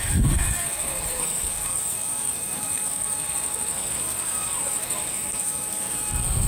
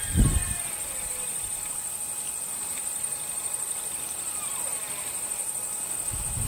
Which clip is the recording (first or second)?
second